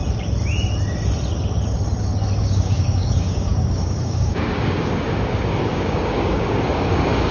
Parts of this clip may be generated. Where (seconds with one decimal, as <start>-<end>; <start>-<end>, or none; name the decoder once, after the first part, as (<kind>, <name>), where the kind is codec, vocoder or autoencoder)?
2.4-7.3 (codec, DAC)